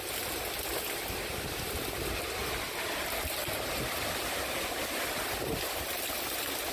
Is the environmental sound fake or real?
fake